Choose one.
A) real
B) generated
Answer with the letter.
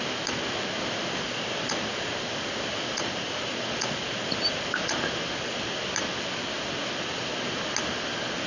A